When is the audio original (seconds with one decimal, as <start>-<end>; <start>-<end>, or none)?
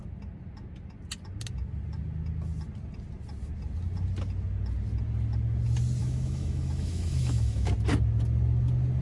0.0-6.0; 7.7-9.0